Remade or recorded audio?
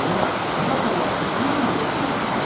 recorded